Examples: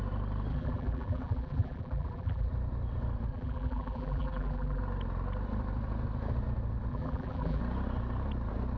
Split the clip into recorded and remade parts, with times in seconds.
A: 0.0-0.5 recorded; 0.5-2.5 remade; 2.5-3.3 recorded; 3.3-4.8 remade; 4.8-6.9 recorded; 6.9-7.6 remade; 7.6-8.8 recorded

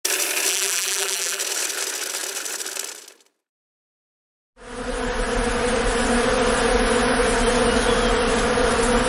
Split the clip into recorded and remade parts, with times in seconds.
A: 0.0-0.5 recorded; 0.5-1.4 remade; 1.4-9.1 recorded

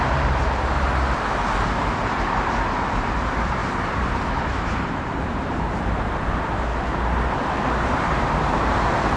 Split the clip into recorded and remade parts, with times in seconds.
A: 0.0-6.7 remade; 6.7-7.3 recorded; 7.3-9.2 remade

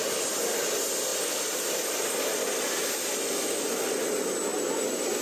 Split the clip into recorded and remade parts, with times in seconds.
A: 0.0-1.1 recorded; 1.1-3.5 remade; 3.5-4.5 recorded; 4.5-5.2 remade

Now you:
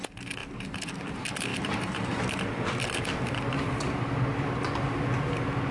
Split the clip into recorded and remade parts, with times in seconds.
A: 0.0-0.4 recorded; 0.4-0.9 remade; 0.9-1.5 recorded; 1.5-2.2 remade; 2.2-5.7 recorded